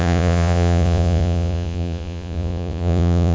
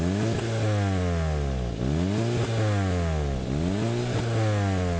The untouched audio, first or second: second